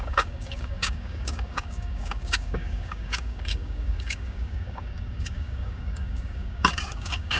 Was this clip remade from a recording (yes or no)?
yes